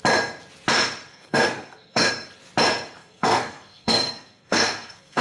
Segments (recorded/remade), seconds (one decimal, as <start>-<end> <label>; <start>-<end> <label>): 0.0-1.1 recorded; 1.1-2.1 remade; 2.1-3.0 recorded; 3.0-5.2 remade